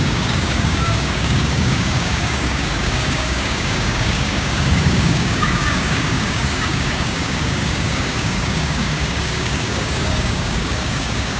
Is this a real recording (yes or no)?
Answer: no